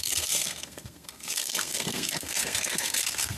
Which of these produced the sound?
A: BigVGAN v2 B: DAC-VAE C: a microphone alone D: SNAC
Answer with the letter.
D